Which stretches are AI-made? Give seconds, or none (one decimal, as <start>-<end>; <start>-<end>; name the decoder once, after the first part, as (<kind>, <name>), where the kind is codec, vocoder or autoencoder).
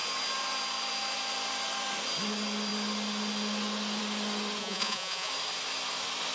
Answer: 4.6-5.3 (vocoder, Vocos)